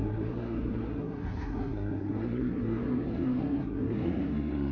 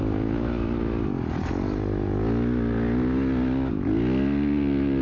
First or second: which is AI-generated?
first